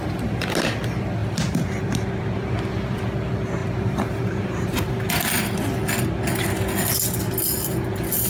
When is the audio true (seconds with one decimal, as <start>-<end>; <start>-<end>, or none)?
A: 0.0-1.2; 2.1-3.6; 4.9-8.3